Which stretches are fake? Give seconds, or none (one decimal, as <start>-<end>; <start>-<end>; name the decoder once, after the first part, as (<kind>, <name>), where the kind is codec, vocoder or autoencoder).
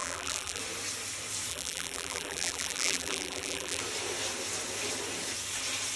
0.0-0.6 (vocoder, BigVGAN v2); 1.5-3.8